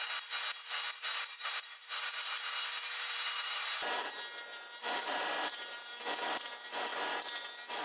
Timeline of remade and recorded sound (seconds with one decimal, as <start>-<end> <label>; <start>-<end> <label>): 0.0-1.1 recorded; 1.1-4.2 remade; 4.2-4.8 recorded; 4.8-6.0 remade; 6.0-7.8 recorded